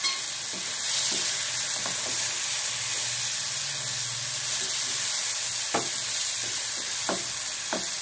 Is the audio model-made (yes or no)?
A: no